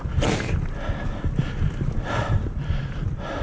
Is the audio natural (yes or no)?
yes